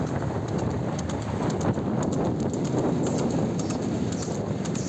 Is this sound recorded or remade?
recorded